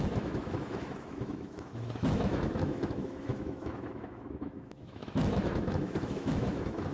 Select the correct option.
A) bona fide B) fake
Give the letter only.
B